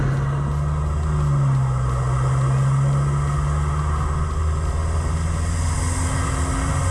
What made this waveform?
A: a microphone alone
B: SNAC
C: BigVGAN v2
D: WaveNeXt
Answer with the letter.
A